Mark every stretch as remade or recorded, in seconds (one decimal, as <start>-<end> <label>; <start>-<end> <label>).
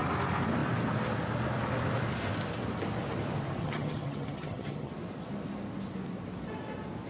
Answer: 0.0-3.6 recorded; 3.6-4.9 remade; 4.9-7.1 recorded